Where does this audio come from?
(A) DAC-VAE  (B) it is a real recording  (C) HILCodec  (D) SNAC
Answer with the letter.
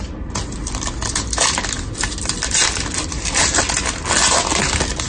B